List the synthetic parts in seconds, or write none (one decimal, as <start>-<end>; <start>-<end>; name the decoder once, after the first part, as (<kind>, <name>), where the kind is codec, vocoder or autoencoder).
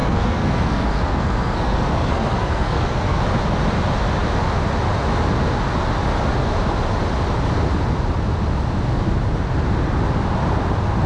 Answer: 0.0-3.2 (codec, SNAC)